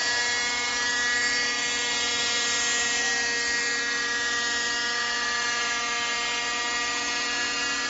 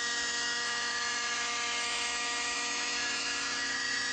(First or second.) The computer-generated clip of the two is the second